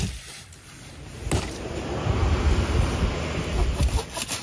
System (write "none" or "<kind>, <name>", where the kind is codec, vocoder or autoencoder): none